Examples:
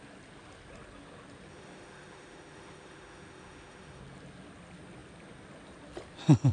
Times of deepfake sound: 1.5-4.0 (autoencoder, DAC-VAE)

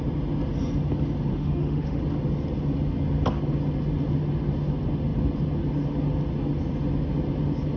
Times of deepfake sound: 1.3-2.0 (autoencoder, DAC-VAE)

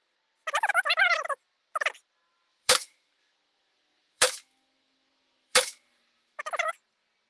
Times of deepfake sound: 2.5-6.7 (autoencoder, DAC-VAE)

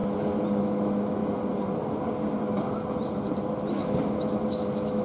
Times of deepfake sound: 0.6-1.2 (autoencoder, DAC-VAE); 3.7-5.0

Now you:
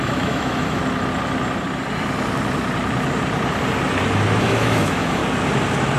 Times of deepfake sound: 0.0-0.8 (autoencoder, DAC-VAE); 4.4-5.2

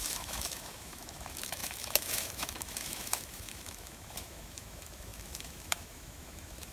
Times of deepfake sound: 0.0-6.7 (autoencoder, DAC-VAE)